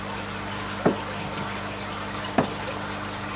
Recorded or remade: recorded